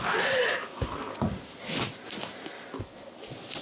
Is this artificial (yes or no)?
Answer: no